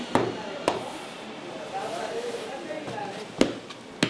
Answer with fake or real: real